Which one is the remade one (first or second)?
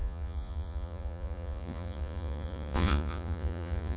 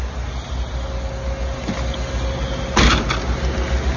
first